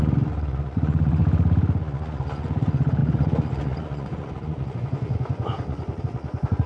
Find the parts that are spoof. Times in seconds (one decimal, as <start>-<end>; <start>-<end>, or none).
0.0-1.2; 1.8-6.7

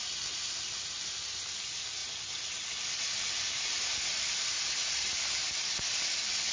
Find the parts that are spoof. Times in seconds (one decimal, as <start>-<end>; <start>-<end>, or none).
none